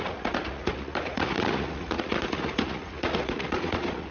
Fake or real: fake